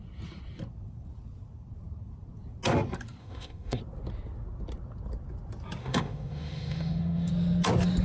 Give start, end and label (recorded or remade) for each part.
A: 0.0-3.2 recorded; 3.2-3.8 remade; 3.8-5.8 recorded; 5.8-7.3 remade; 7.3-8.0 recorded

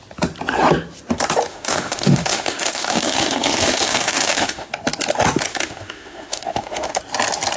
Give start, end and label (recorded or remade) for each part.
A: 0.0-1.5 recorded; 1.5-4.7 remade; 4.7-5.5 recorded; 5.5-7.0 remade; 7.0-7.6 recorded

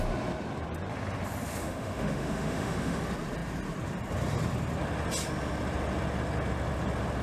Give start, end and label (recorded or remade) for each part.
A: 0.0-1.6 recorded; 1.6-3.0 remade; 3.0-7.2 recorded